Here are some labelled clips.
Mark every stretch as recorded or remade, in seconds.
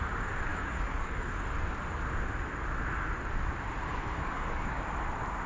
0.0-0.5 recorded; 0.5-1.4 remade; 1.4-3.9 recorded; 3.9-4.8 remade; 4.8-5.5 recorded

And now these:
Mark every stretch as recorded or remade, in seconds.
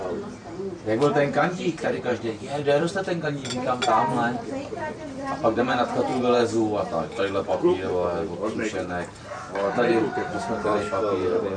0.0-0.4 remade; 0.4-1.4 recorded; 1.4-3.4 remade; 3.4-4.9 recorded; 4.9-6.1 remade; 6.1-9.2 recorded; 9.2-11.6 remade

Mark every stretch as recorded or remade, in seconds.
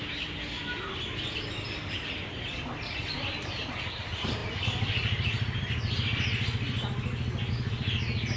0.0-8.4 recorded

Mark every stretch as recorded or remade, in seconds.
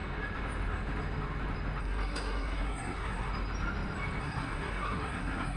0.0-1.8 recorded; 1.8-3.3 remade; 3.3-4.2 recorded; 4.2-5.6 remade